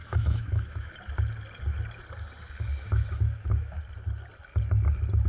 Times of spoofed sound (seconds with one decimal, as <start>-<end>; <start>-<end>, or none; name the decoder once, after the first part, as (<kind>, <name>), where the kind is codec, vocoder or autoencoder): 0.0-0.9 (autoencoder, DAC-VAE); 2.7-3.8